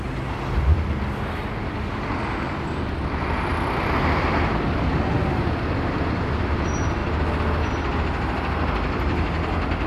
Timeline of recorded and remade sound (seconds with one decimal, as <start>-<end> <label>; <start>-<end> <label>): 0.0-9.9 recorded